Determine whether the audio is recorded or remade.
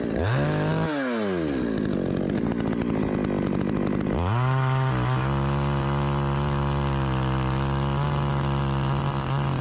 recorded